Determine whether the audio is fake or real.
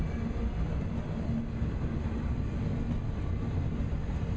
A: real